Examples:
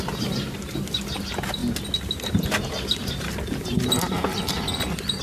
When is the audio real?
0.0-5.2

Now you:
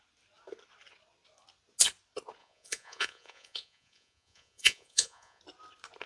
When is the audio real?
0.0-2.4; 5.4-6.1

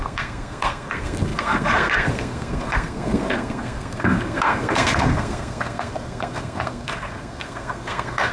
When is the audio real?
none

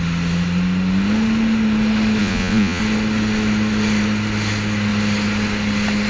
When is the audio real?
0.0-2.2; 2.8-6.1

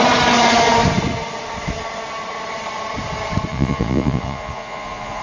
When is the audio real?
0.0-3.5

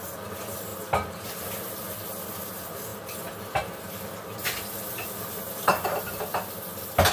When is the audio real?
0.0-7.1